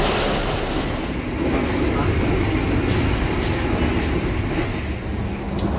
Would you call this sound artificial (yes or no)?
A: no